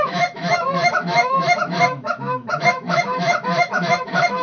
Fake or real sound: fake